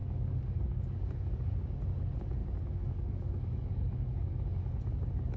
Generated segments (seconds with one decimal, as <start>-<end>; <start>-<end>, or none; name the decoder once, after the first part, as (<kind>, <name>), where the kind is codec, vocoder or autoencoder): 0.0-1.4 (codec, DAC); 2.4-4.4